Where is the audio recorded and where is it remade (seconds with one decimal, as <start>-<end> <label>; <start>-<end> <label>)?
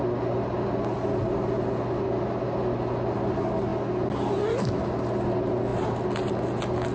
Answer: 0.0-6.9 recorded